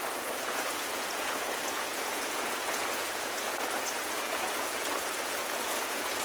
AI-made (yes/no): yes